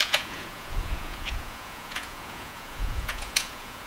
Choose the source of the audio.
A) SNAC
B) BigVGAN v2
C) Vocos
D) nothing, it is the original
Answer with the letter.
C